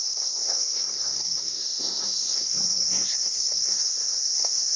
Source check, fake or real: fake